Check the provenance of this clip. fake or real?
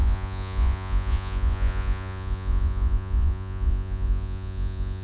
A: fake